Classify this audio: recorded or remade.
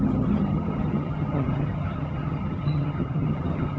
remade